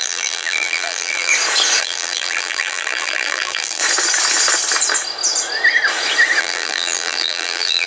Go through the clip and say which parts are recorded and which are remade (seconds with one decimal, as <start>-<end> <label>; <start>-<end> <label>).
0.0-1.3 remade; 1.3-1.8 recorded; 1.8-3.8 remade; 3.8-6.4 recorded; 6.4-7.9 remade